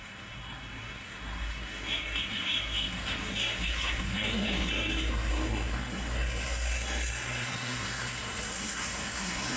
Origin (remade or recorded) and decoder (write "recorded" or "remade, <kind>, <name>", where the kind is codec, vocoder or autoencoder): remade, codec, SNAC